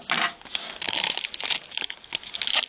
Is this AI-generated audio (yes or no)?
no